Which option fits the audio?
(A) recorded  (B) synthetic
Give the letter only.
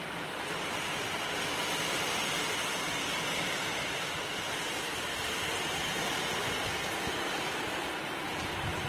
A